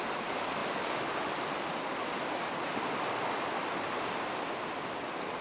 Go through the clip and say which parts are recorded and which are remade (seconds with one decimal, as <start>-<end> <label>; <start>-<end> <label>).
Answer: 0.0-5.4 recorded